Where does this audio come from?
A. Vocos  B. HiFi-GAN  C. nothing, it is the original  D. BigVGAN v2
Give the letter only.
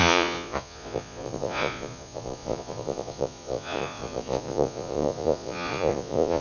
A